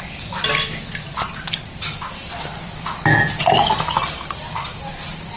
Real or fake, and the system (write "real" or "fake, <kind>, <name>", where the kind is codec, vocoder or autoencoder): real